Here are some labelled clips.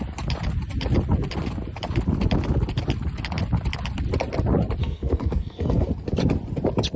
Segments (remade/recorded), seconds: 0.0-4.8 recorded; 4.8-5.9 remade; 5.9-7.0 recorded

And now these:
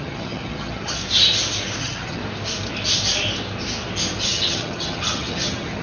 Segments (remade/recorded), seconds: 0.0-1.0 remade; 1.0-1.8 recorded; 1.8-2.2 remade; 2.2-4.2 recorded; 4.2-5.8 remade